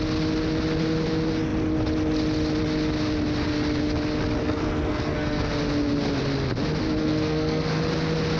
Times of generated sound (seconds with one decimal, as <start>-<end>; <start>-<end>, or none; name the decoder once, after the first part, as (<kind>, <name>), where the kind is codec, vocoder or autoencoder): 4.4-5.5 (codec, SNAC); 7.0-7.8